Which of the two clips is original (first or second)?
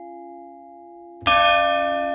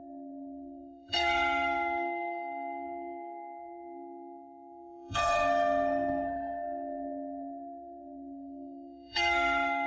first